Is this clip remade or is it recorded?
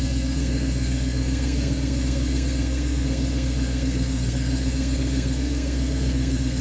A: remade